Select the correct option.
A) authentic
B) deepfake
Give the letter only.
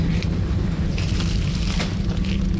B